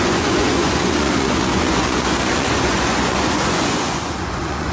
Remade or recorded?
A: remade